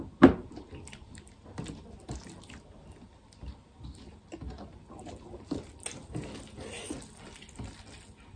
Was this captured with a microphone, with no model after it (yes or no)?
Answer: yes